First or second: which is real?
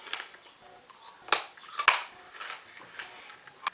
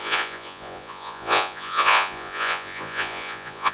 first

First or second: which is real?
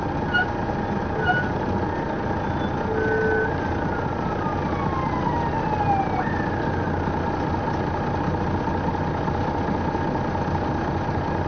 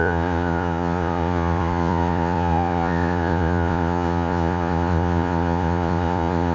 first